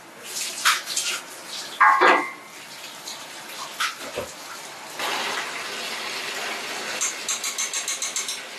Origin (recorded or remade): recorded